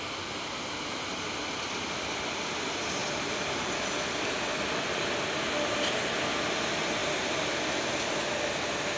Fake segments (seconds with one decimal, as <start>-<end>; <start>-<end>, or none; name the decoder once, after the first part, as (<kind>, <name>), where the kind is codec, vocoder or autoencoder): 3.0-3.8 (vocoder, BigVGAN v2); 7.0-7.9